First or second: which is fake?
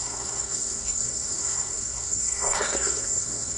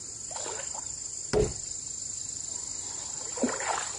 first